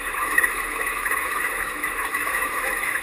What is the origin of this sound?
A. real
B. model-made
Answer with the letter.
B